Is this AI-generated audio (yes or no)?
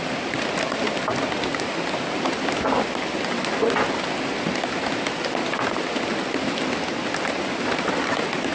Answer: no